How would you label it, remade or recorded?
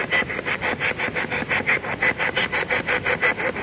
recorded